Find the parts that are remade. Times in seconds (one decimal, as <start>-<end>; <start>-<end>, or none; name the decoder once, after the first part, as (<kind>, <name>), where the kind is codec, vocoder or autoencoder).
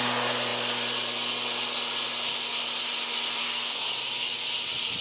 3.4-3.9 (codec, SNAC)